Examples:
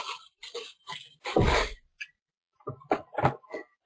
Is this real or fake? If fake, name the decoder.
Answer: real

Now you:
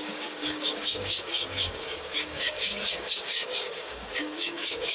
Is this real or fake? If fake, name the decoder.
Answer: fake, codec, DAC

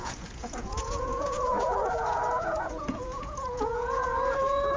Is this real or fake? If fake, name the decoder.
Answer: fake, vocoder, Vocos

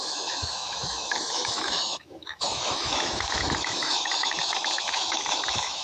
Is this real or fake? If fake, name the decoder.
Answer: fake, autoencoder, DAC-VAE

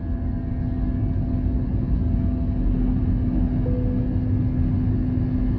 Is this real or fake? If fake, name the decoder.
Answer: real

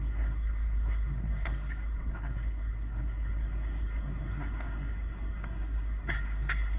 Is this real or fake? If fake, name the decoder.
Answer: fake, codec, SNAC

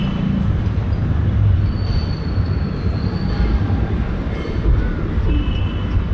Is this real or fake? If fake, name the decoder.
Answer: real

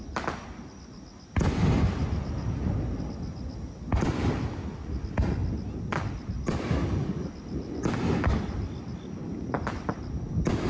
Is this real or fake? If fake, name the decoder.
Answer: real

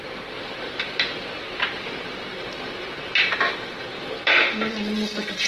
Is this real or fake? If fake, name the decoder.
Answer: real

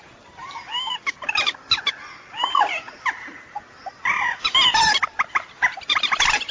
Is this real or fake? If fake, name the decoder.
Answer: real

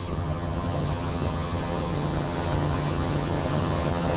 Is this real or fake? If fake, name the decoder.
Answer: fake, vocoder, HiFi-GAN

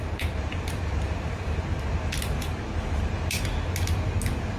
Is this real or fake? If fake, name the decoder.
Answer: real